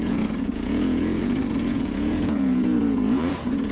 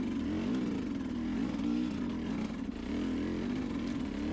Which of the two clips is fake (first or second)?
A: first